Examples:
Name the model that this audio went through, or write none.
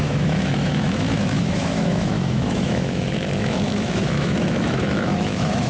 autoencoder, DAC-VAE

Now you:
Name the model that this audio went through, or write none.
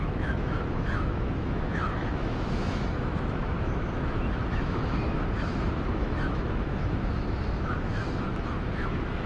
autoencoder, DAC-VAE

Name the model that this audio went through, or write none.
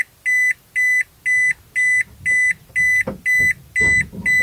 none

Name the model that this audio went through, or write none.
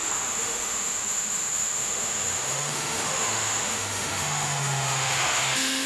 autoencoder, DAC-VAE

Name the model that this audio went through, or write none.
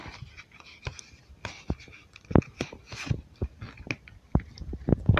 none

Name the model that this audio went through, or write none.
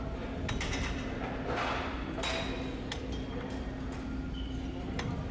none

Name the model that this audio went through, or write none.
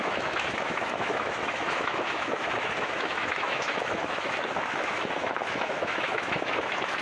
autoencoder, DAC-VAE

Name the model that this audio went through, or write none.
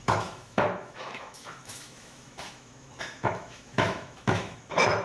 autoencoder, DAC-VAE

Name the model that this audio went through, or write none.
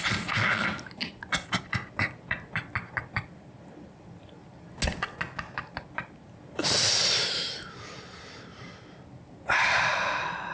none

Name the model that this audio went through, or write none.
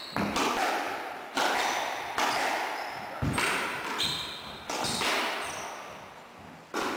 none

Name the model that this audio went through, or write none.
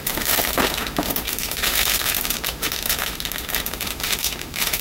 autoencoder, DAC-VAE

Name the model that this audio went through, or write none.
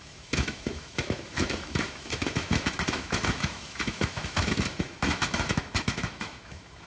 autoencoder, DAC-VAE